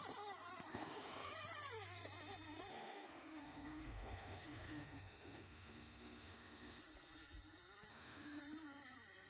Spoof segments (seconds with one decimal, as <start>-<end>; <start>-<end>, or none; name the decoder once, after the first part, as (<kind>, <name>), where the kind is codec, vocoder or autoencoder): 0.7-1.3 (autoencoder, DAC-VAE); 2.7-6.8; 7.9-8.4